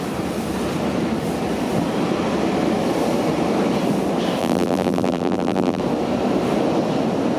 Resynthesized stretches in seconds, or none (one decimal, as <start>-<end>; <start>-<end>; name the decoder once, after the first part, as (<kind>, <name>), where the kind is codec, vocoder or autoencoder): 4.4-5.8 (vocoder, BigVGAN v2)